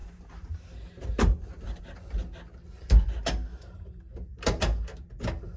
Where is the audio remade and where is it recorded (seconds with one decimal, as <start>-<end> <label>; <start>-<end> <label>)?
0.0-1.8 remade; 1.8-3.5 recorded; 3.5-4.1 remade; 4.1-5.6 recorded